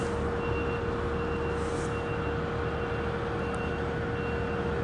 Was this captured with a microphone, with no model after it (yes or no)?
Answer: yes